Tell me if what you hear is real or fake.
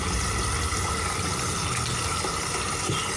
real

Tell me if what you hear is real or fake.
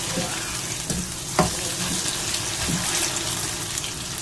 real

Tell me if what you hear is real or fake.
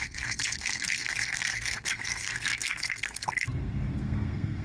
fake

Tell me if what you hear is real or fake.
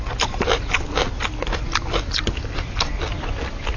real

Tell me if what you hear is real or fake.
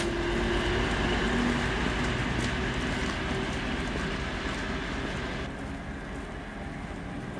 real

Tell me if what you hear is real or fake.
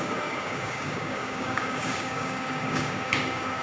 fake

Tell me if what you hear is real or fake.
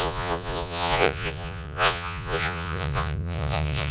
fake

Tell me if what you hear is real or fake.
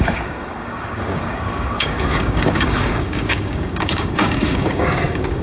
fake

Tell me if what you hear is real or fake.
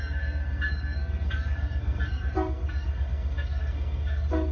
fake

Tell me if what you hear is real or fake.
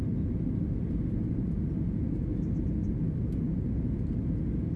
real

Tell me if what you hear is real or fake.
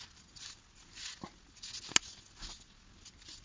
real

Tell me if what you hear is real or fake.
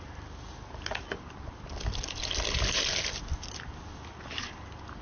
real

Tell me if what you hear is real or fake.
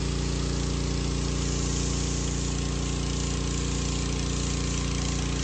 real